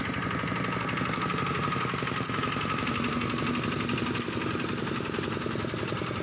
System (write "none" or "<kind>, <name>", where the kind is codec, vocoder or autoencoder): none